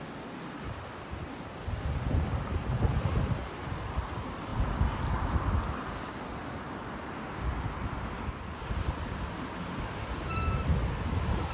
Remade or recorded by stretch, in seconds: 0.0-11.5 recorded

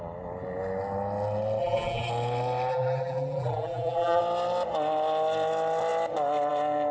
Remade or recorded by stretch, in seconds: 0.0-1.6 recorded; 1.6-2.1 remade; 2.1-2.7 recorded; 2.7-4.2 remade; 4.2-6.9 recorded

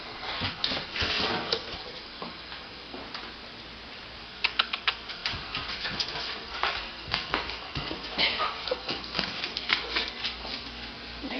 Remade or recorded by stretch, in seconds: 0.0-3.0 remade; 3.0-4.2 recorded; 4.2-11.4 remade